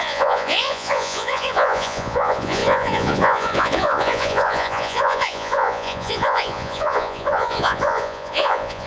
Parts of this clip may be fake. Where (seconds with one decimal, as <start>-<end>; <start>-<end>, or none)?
0.0-8.9

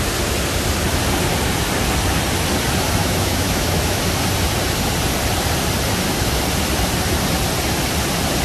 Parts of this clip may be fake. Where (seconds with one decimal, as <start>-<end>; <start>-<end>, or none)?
3.0-4.0

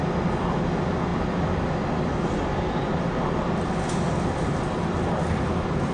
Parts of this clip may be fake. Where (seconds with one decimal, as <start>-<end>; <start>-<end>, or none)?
none

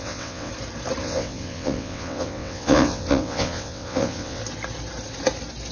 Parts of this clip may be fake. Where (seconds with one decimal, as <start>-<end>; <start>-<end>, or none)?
0.0-0.5; 1.0-4.4

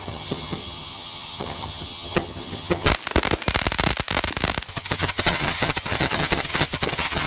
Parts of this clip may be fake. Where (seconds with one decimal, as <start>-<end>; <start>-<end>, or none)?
0.0-2.9; 4.7-7.3